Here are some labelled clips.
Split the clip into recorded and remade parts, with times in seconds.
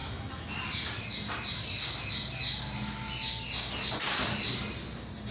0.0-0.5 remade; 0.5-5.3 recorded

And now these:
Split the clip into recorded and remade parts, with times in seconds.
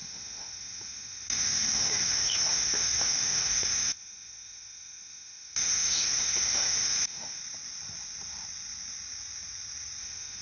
0.0-7.4 remade; 7.4-10.0 recorded; 10.0-10.4 remade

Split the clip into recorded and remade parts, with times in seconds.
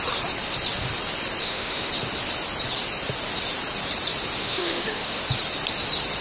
0.0-1.4 recorded; 1.4-1.9 remade; 1.9-4.4 recorded; 4.4-5.2 remade; 5.2-6.2 recorded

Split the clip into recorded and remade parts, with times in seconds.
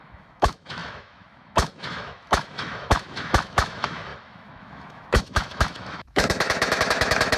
0.0-7.4 remade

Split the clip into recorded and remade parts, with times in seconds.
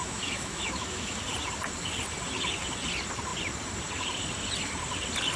0.0-1.2 remade; 1.2-5.4 recorded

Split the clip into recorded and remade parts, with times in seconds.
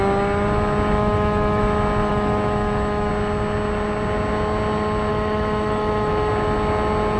0.0-1.0 recorded; 1.0-1.6 remade; 1.6-2.1 recorded; 2.1-3.1 remade; 3.1-5.1 recorded; 5.1-6.3 remade; 6.3-7.2 recorded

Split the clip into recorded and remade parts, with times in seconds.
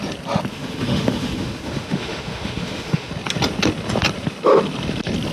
0.0-0.5 recorded; 0.5-3.1 remade; 3.1-5.3 recorded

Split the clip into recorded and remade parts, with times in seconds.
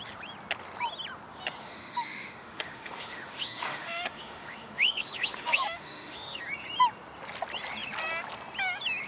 0.0-1.6 recorded; 1.6-6.4 remade; 6.4-9.1 recorded